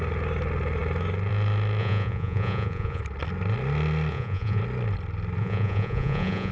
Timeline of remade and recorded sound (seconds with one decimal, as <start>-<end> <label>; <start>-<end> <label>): 0.0-1.8 recorded; 1.8-3.0 remade; 3.0-4.1 recorded; 4.1-4.6 remade; 4.6-5.4 recorded; 5.4-6.5 remade